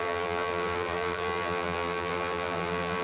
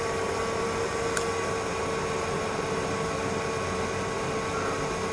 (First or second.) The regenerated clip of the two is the first